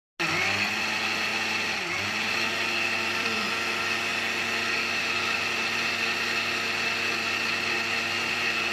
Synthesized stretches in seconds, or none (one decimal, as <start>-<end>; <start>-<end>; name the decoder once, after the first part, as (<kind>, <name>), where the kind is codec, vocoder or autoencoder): none